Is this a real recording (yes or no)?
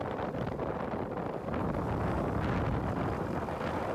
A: yes